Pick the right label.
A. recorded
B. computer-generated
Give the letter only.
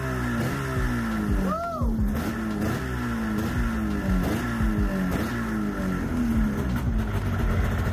A